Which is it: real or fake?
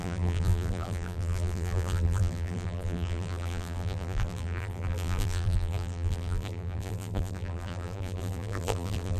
fake